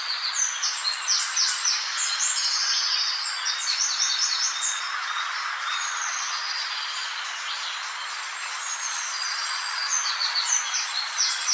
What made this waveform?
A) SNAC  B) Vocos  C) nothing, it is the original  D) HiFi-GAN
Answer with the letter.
B